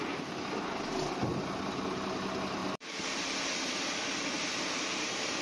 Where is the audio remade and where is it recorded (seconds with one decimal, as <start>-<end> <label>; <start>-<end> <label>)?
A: 0.0-2.6 recorded; 2.6-4.6 remade; 4.6-5.4 recorded

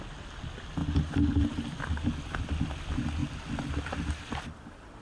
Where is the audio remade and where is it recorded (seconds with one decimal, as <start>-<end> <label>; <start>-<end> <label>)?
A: 0.0-5.0 recorded